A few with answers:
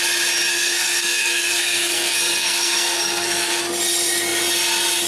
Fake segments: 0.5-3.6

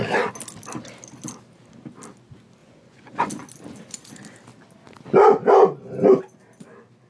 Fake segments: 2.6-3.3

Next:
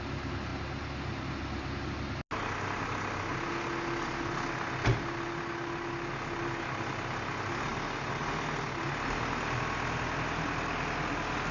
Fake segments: none